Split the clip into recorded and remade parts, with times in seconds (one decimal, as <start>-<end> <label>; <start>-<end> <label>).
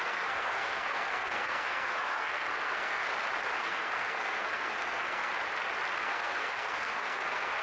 0.0-3.1 remade; 3.1-3.6 recorded; 3.6-5.3 remade; 5.3-6.0 recorded; 6.0-7.6 remade